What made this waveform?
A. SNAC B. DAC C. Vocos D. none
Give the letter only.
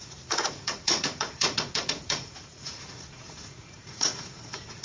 C